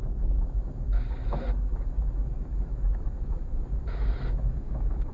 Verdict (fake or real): fake